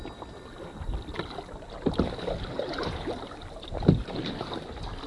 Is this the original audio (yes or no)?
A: yes